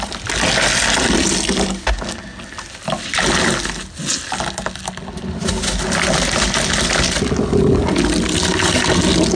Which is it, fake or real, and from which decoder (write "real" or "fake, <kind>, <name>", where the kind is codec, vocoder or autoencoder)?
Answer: real